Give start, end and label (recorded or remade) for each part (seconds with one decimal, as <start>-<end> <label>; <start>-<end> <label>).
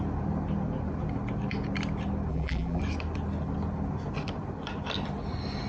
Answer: 0.0-2.3 recorded; 2.3-2.8 remade; 2.8-5.7 recorded